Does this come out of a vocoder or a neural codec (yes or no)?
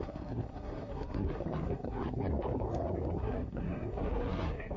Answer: yes